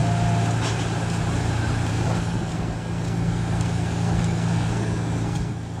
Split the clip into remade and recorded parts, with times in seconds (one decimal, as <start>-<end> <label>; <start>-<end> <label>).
0.0-1.9 recorded; 1.9-5.8 remade